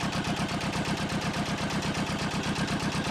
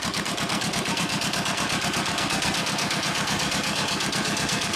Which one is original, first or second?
first